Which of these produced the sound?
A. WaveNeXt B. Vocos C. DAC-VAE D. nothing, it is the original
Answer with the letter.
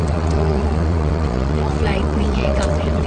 A